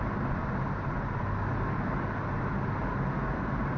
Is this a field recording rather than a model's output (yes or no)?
yes